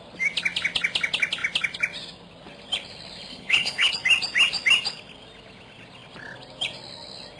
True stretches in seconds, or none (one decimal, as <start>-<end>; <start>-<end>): 0.0-3.3; 3.9-7.4